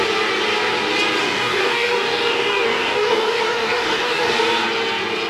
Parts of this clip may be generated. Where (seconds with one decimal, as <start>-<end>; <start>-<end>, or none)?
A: 1.2-4.4